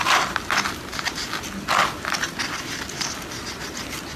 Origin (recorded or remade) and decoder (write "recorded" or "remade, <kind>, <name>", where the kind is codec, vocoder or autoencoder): recorded